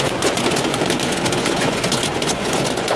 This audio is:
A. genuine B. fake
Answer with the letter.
B